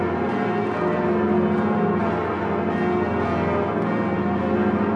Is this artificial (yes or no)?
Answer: no